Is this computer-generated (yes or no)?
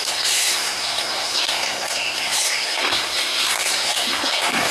yes